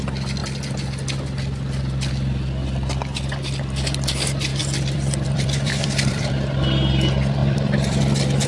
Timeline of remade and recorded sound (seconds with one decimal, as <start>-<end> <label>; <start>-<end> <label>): 0.0-4.5 recorded; 4.5-6.3 remade; 6.3-7.4 recorded; 7.4-8.0 remade; 8.0-8.5 recorded

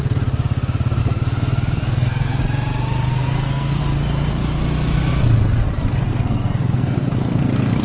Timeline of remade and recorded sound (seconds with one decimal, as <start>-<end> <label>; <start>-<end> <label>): 0.0-1.0 recorded; 1.0-2.4 remade; 2.4-3.1 recorded; 3.1-3.8 remade; 3.8-6.1 recorded; 6.1-7.8 remade